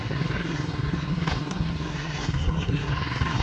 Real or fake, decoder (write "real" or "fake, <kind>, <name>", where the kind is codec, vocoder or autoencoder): fake, codec, SNAC